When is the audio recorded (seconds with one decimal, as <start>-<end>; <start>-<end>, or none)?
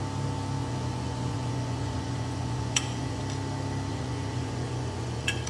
0.0-0.6; 3.2-3.9